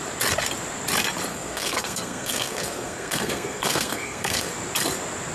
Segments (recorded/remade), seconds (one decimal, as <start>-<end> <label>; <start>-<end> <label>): 0.0-1.3 recorded; 1.3-4.5 remade; 4.5-5.3 recorded